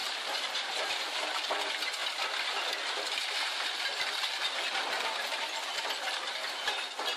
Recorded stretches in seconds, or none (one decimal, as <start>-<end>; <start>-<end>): 1.5-7.2